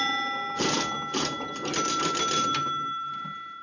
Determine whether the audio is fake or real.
real